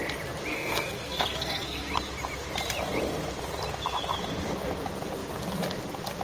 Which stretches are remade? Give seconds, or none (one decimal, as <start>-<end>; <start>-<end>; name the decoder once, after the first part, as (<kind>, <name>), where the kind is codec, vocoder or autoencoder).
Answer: 0.5-1.9 (codec, SNAC)